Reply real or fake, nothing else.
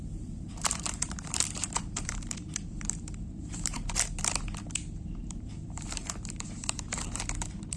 fake